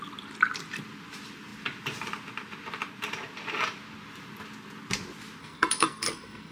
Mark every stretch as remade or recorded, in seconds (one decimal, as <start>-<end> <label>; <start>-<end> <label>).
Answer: 0.0-5.4 recorded; 5.4-6.5 remade